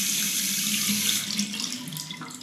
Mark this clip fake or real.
real